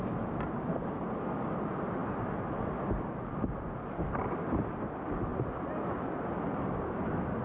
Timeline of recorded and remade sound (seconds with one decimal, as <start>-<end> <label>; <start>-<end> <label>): 0.0-7.4 recorded